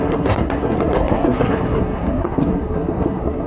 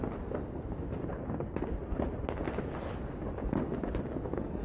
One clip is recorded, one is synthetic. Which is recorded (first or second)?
second